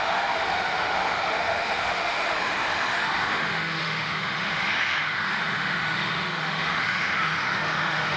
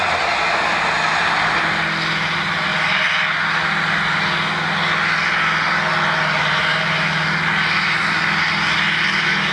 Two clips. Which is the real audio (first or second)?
second